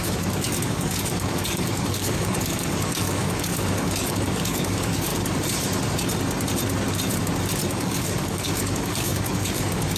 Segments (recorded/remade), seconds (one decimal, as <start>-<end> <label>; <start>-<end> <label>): 0.0-5.1 remade; 5.1-7.7 recorded; 7.7-10.0 remade